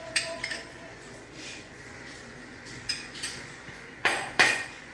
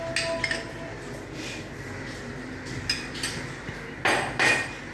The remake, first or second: first